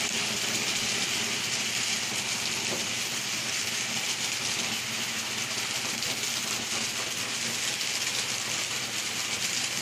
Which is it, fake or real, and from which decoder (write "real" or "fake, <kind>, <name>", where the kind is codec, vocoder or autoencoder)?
real